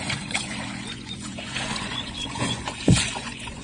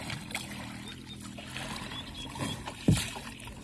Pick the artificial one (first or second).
first